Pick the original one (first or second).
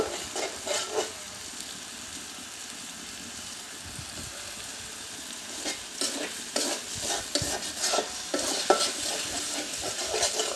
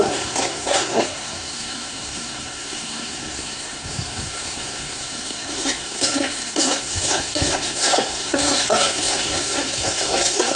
first